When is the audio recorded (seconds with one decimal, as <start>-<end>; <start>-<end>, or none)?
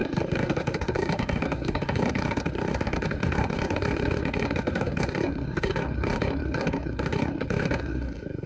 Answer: none